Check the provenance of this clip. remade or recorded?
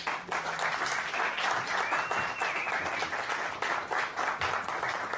recorded